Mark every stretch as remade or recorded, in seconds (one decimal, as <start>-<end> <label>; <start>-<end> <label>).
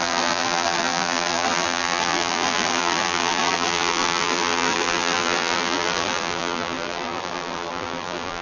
0.0-8.4 remade